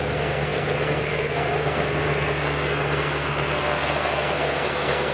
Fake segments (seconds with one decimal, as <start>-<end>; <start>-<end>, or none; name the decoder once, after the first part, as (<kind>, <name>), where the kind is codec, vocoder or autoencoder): 0.0-5.1 (codec, SNAC)